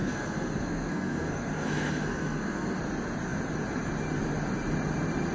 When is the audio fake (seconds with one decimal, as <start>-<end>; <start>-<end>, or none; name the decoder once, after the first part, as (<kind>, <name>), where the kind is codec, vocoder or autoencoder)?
0.0-2.8 (codec, SNAC)